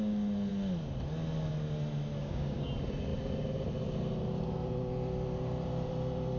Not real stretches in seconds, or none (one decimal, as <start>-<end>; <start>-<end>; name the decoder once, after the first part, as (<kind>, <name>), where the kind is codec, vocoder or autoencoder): 2.2-2.7 (codec, DAC)